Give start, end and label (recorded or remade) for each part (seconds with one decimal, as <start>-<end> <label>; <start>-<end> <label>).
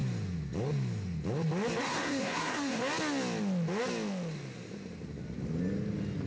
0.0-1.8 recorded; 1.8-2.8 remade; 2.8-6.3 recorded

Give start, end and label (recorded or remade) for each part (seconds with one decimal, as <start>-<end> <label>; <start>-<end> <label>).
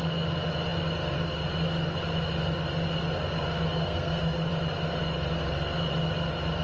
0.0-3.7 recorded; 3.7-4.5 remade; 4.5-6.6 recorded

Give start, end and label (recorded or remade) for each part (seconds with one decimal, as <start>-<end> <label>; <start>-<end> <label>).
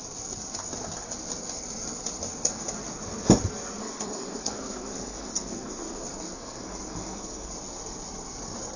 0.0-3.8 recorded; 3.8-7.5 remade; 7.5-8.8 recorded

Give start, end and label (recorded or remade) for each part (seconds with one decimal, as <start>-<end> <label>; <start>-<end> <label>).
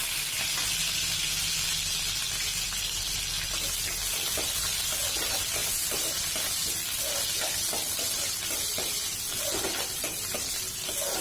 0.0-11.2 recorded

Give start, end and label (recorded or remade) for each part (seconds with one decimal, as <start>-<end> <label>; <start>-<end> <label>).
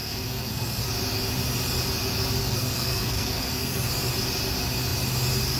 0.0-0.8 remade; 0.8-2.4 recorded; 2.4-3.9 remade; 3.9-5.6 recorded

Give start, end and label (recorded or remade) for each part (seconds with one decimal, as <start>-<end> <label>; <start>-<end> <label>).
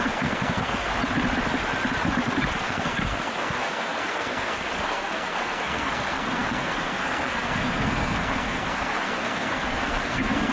0.0-0.9 remade; 0.9-2.6 recorded; 2.6-10.5 remade